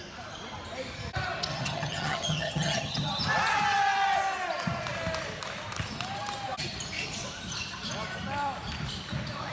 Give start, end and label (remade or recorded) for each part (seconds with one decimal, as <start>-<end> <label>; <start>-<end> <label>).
0.0-1.5 recorded; 1.5-3.2 remade; 3.2-9.5 recorded